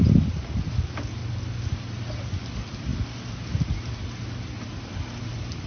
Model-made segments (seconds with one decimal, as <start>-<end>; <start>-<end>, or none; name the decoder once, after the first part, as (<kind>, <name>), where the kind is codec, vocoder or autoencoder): none